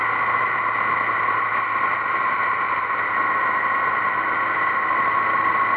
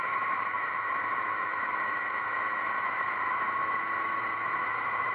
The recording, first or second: first